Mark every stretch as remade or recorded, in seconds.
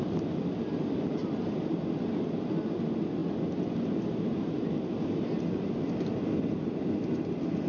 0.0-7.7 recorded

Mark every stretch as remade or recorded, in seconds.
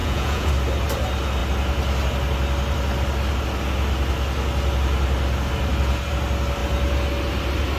0.0-0.5 remade; 0.5-7.8 recorded